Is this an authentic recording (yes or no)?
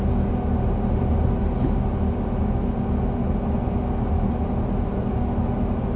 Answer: yes